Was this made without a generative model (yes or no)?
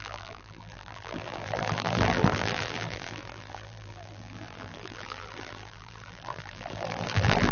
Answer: no